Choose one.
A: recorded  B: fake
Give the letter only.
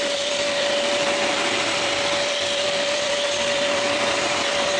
B